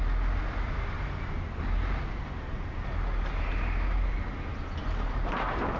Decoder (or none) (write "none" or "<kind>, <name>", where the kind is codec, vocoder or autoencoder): none